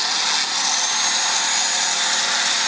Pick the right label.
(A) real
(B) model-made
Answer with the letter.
A